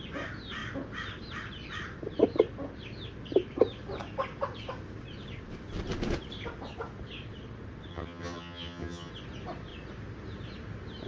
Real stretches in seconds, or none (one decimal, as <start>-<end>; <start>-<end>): 0.0-7.9; 9.1-11.1